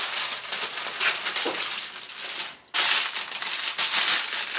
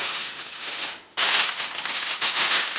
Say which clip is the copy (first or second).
second